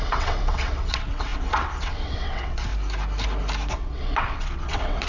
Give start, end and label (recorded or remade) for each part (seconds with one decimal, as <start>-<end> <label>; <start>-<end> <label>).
0.0-2.7 remade; 2.7-3.7 recorded; 3.7-5.1 remade